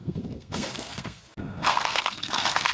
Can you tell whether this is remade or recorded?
remade